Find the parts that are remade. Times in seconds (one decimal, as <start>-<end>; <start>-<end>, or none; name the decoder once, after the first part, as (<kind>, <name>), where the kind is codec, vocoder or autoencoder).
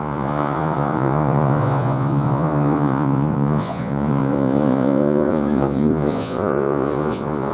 0.0-7.5 (vocoder, Vocos)